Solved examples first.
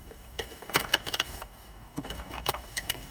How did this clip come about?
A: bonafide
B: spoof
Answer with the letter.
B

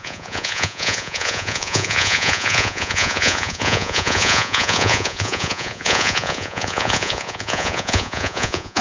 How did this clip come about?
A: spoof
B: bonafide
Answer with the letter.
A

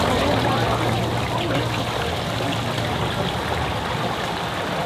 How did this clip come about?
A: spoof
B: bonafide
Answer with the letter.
B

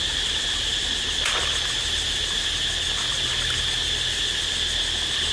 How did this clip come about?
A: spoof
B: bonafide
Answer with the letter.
B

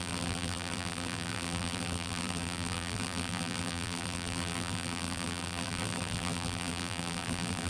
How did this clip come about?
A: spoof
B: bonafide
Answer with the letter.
A